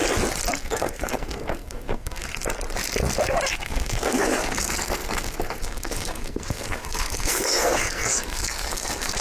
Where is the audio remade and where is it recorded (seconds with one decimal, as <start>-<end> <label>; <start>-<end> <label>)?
0.0-0.6 recorded; 0.6-2.3 remade; 2.3-3.5 recorded; 3.5-9.2 remade